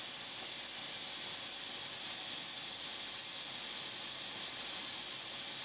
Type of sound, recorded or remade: recorded